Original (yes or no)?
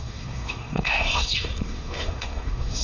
no